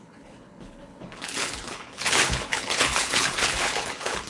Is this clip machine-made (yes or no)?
yes